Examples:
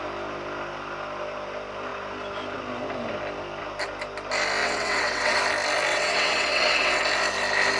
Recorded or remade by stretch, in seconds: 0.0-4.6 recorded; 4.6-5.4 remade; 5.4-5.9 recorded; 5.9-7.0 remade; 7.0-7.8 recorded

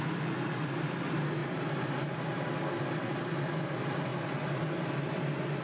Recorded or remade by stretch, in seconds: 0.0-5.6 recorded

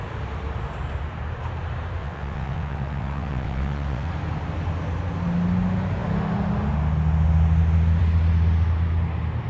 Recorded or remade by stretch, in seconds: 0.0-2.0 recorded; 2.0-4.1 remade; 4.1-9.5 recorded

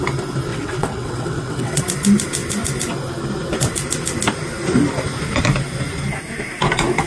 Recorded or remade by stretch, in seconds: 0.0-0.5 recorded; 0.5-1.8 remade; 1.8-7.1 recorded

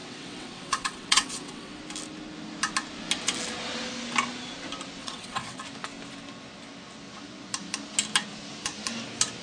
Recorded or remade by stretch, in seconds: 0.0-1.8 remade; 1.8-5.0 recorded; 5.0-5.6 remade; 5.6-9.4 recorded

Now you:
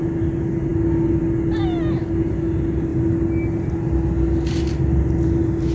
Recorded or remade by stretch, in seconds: 0.0-5.7 recorded